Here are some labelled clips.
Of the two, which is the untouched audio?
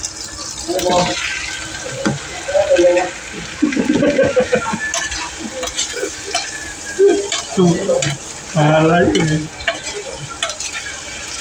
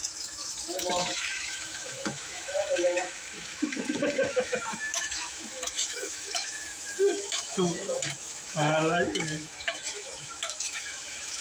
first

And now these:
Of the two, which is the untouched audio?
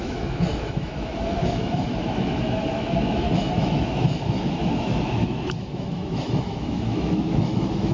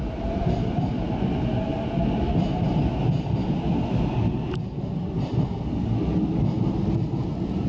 second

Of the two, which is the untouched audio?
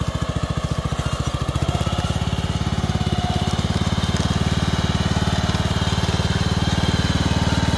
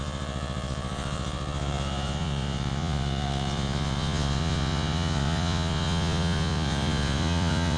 first